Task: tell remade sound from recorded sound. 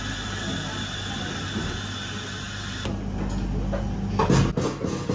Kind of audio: recorded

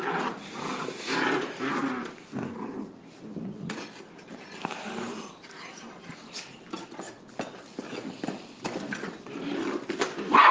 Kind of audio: recorded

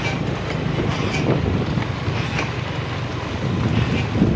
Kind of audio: recorded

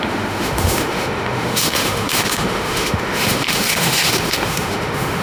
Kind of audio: remade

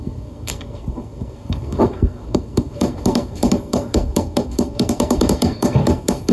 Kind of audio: remade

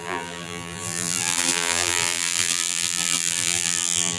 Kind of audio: remade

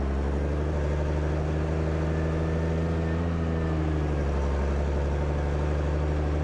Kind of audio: recorded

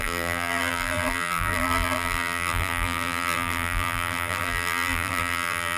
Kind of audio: remade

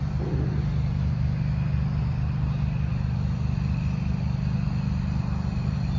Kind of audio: recorded